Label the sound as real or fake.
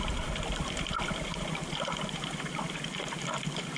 real